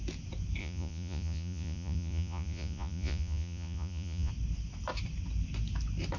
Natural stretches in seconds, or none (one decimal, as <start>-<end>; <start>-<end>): 0.0-0.6; 4.3-6.2